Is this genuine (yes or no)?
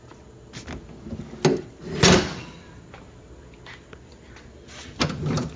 yes